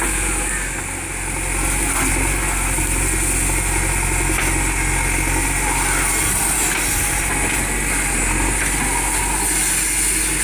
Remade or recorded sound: recorded